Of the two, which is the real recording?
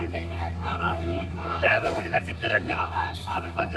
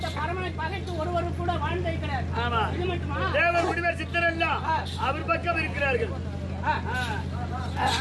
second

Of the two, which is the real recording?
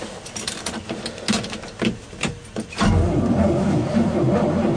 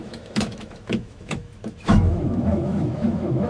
first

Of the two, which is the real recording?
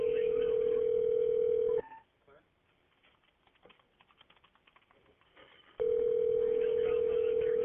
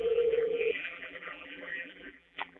first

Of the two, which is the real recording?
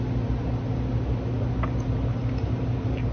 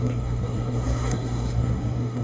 first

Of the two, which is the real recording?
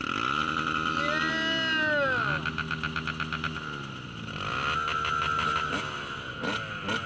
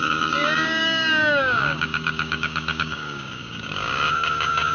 first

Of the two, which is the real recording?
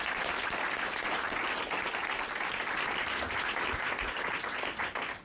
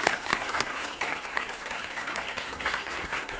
first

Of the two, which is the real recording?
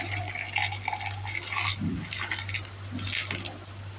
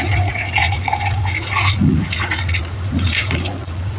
first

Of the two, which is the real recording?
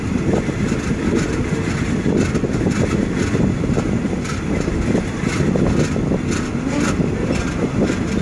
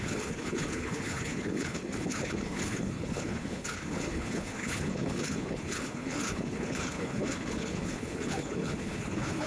first